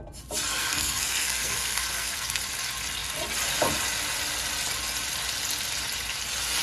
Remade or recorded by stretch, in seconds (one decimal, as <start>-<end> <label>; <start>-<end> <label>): 0.0-0.5 recorded; 0.5-2.4 remade; 2.4-6.6 recorded